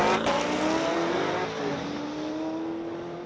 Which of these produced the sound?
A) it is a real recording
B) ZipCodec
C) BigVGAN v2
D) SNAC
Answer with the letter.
A